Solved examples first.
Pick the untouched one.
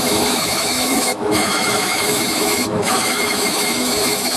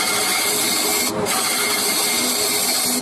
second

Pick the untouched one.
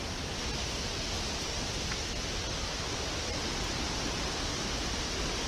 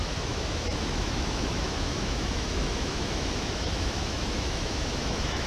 first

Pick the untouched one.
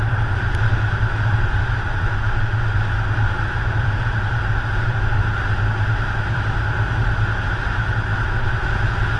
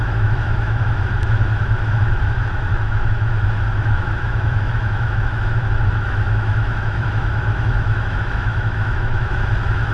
first